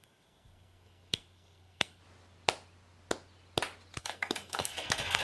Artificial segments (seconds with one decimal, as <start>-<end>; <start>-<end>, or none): 0.0-2.0; 4.0-5.2

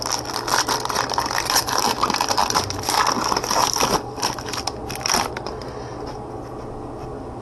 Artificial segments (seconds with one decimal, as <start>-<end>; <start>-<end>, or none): none

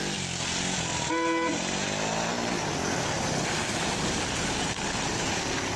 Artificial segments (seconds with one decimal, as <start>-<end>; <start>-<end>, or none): 0.0-0.9; 2.3-5.8

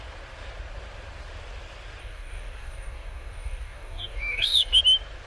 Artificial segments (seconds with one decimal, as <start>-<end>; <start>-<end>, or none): 2.0-4.8

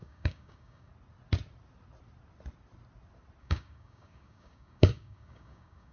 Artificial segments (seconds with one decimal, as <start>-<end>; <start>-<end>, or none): 0.0-0.9; 3.4-5.9

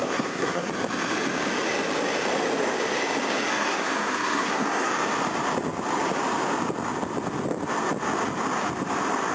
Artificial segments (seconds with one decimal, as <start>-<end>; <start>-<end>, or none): 0.0-0.7; 3.5-4.9

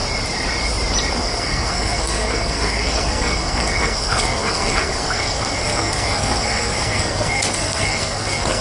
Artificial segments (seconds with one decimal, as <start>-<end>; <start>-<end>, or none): 1.1-8.6

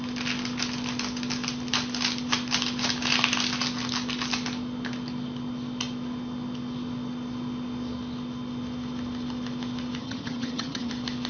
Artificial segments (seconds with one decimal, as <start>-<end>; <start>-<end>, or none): 10.0-10.9